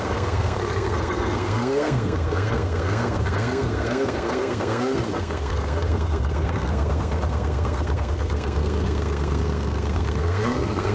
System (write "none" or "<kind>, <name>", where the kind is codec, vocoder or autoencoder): codec, SNAC